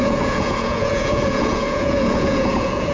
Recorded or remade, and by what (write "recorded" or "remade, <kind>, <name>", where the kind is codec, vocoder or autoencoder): remade, vocoder, Vocos